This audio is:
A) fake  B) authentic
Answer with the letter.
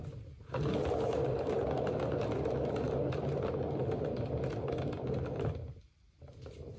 B